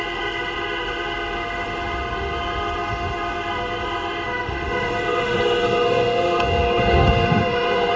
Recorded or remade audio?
remade